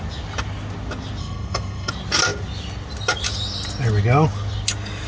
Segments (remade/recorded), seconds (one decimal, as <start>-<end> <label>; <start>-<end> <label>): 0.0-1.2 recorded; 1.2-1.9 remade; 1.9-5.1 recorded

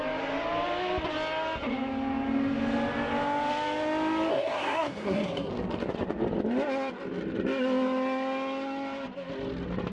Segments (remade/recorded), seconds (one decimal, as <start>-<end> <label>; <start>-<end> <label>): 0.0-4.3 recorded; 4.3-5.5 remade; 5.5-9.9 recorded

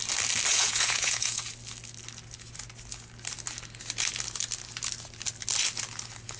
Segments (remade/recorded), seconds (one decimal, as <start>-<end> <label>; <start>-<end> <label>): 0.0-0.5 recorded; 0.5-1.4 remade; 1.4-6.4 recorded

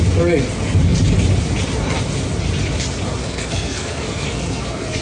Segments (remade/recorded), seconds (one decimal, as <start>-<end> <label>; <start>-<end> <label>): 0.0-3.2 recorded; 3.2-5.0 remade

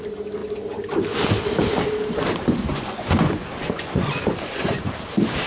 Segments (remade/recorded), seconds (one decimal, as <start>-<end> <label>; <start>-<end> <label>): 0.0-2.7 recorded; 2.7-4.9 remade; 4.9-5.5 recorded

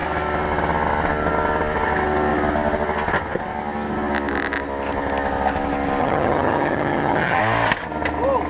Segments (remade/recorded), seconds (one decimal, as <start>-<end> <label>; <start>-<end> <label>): 0.0-6.0 recorded; 6.0-7.4 remade; 7.4-8.5 recorded

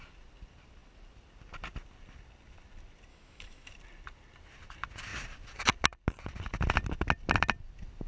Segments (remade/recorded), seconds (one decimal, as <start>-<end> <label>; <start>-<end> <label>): 0.0-3.1 recorded; 3.1-3.7 remade; 3.7-8.1 recorded